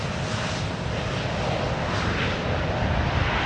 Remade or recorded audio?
recorded